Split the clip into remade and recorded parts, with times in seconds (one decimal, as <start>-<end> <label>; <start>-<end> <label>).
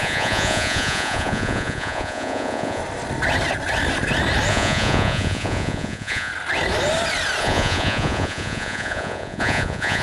0.0-2.8 remade; 2.8-4.5 recorded; 4.5-6.3 remade; 6.3-7.4 recorded; 7.4-10.0 remade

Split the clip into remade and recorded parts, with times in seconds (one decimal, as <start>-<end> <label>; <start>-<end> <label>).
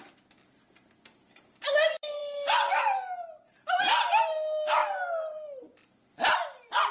0.0-6.9 recorded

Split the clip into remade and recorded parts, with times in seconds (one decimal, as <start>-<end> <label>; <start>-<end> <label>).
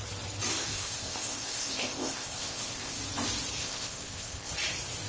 0.0-0.5 recorded; 0.5-3.0 remade; 3.0-3.6 recorded; 3.6-4.5 remade; 4.5-5.1 recorded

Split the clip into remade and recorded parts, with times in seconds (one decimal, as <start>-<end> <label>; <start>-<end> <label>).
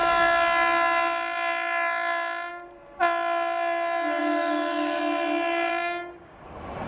0.0-4.2 recorded; 4.2-5.0 remade; 5.0-5.7 recorded; 5.7-6.4 remade; 6.4-6.9 recorded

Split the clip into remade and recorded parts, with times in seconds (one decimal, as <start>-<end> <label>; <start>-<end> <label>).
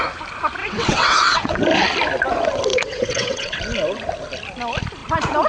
0.0-0.6 recorded; 0.6-1.6 remade; 1.6-2.7 recorded; 2.7-3.6 remade; 3.6-5.5 recorded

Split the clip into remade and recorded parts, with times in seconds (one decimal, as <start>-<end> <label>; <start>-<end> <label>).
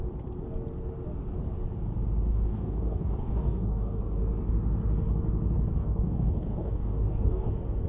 0.0-2.3 recorded; 2.3-4.0 remade; 4.0-5.8 recorded; 5.8-7.5 remade; 7.5-7.9 recorded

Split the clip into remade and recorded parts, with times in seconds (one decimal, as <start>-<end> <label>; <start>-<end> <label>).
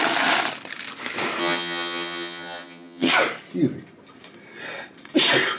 0.0-1.4 recorded; 1.4-3.1 remade; 3.1-5.6 recorded